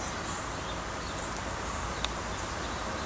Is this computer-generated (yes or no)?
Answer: no